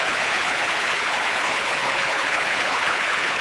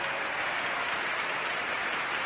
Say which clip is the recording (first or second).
second